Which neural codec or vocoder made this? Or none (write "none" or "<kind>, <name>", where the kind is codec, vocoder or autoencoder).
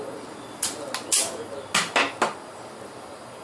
none